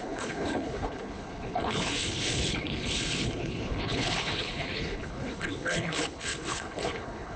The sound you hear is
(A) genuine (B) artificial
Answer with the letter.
B